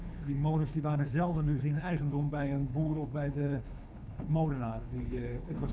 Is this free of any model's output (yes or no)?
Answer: no